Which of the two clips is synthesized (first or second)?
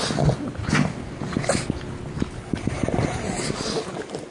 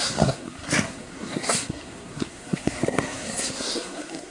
second